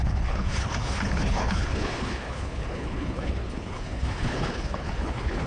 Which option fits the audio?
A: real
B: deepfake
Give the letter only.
B